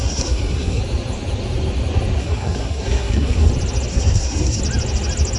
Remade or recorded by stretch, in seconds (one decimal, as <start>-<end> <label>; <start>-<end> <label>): 0.0-0.8 remade; 0.8-2.2 recorded; 2.2-3.5 remade; 3.5-3.9 recorded; 3.9-4.6 remade; 4.6-5.4 recorded